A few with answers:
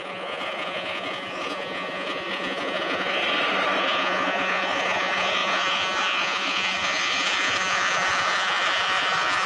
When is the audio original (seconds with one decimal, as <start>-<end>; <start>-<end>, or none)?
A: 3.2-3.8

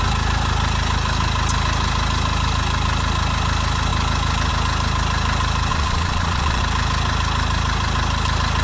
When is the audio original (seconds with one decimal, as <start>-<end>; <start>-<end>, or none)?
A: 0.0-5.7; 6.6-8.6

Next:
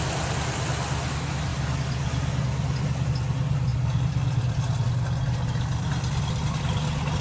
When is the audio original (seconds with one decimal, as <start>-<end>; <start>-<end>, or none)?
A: 0.0-7.2

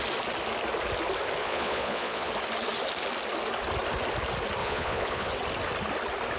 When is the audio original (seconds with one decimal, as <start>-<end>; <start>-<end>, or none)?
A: 0.0-1.4; 2.3-4.6; 5.3-6.4

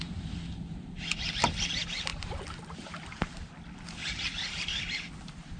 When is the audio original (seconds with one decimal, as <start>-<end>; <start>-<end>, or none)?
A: 0.0-5.6